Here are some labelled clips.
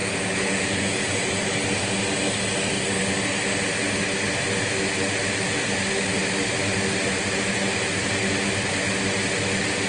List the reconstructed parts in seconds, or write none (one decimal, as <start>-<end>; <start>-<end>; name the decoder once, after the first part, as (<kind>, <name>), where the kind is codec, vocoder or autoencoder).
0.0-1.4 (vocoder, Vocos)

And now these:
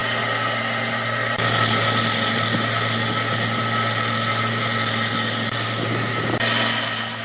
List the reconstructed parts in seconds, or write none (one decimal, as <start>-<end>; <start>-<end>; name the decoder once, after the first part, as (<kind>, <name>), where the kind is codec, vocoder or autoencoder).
none

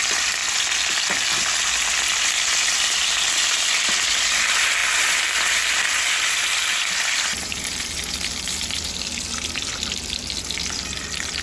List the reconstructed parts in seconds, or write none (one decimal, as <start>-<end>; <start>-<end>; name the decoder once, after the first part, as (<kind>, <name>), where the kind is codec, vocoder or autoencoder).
0.0-0.4 (vocoder, BigVGAN v2); 1.9-11.4

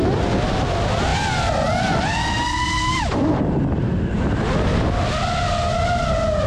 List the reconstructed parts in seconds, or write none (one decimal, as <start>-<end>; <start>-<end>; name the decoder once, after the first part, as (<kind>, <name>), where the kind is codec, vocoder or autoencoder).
none

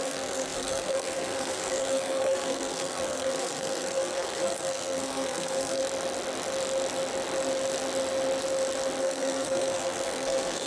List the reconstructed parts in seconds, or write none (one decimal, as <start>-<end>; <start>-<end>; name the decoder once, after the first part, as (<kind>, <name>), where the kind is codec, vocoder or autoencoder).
0.0-5.8 (codec, SNAC); 9.0-10.7